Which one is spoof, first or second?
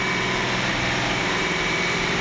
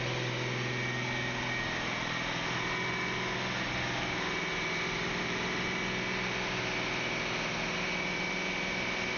first